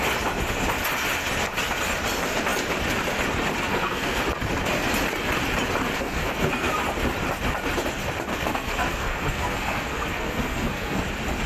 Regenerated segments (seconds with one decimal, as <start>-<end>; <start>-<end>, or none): 3.7-4.2; 5.9-6.7; 8.3-11.0